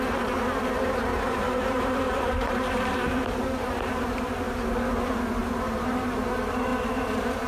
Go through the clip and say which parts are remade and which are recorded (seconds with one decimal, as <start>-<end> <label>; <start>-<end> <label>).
0.0-1.1 recorded; 1.1-4.7 remade; 4.7-5.4 recorded; 5.4-6.3 remade; 6.3-6.7 recorded; 6.7-7.5 remade